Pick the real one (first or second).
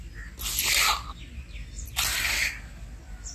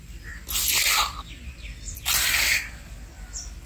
first